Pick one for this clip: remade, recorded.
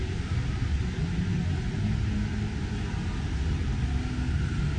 recorded